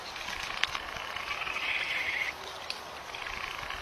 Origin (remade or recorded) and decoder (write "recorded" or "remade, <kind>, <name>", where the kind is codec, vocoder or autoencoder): recorded